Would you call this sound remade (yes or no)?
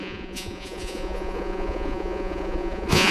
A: yes